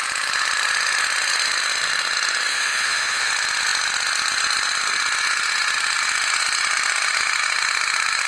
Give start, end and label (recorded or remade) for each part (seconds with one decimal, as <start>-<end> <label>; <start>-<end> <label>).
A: 0.0-2.5 recorded; 2.5-3.3 remade; 3.3-8.3 recorded

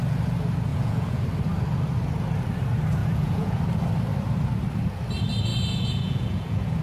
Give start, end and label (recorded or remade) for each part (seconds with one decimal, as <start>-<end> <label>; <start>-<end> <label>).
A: 0.0-0.7 recorded; 0.7-1.2 remade; 1.2-3.0 recorded; 3.0-3.6 remade; 3.6-5.5 recorded; 5.5-6.8 remade